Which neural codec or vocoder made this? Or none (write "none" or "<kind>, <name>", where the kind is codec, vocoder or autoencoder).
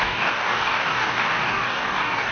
codec, DAC